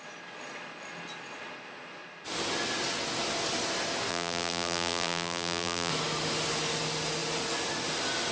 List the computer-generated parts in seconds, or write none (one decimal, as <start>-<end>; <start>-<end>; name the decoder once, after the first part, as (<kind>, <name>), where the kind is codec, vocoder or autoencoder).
4.1-5.9 (vocoder, BigVGAN v2)